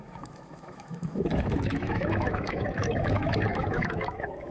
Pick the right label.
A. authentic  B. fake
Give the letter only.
B